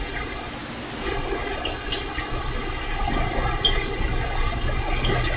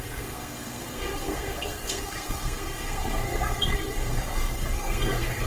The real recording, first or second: first